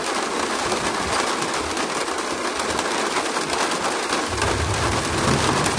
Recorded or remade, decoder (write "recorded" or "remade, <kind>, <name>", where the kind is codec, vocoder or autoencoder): recorded